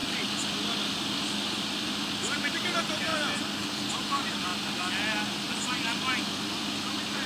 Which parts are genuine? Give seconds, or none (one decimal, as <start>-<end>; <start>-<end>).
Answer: 0.0-2.5; 3.1-3.9; 4.5-7.3